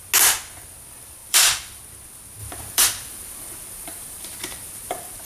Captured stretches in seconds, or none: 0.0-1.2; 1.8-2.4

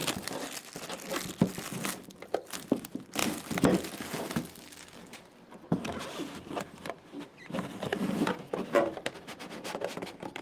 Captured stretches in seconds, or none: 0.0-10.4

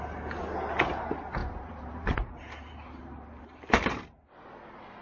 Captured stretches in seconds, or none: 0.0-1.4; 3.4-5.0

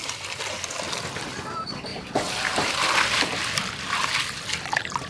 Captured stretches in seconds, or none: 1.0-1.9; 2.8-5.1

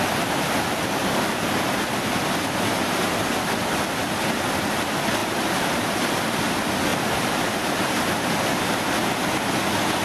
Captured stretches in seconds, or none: 0.0-1.0; 1.5-5.2; 6.4-6.9; 8.8-10.0

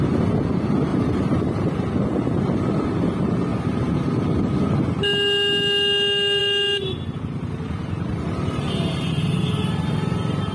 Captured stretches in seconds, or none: 0.0-0.9; 1.7-8.1; 9.4-10.5